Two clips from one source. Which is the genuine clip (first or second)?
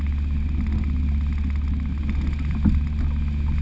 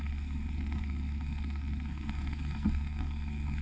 first